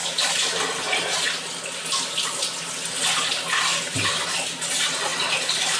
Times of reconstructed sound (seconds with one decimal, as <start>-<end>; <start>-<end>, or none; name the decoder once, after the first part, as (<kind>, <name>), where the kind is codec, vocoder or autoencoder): 3.7-4.3 (vocoder, BigVGAN v2)